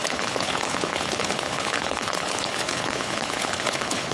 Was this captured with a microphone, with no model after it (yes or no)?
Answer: no